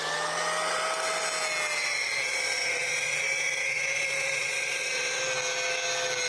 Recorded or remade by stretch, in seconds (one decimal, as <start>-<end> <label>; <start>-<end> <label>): 0.0-1.8 recorded; 1.8-5.2 remade; 5.2-6.3 recorded